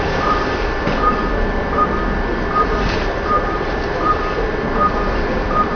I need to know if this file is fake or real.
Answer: fake